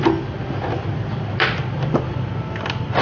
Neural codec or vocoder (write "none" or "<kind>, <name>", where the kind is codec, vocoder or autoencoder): none